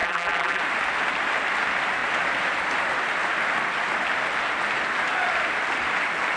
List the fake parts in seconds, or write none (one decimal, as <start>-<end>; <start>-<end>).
0.0-0.6